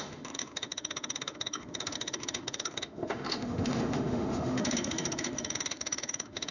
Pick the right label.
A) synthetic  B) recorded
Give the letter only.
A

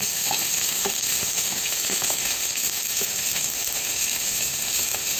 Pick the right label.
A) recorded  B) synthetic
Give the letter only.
B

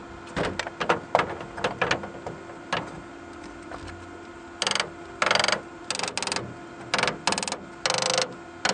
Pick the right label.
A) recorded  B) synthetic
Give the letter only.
A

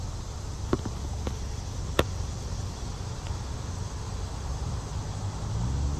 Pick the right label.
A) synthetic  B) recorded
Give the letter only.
B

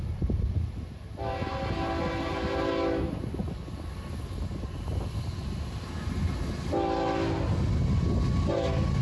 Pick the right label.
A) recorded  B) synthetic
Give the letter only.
A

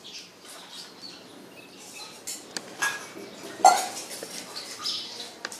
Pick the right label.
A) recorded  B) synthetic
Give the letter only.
A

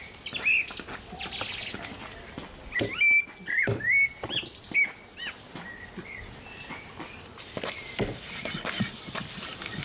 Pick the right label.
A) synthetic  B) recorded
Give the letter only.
B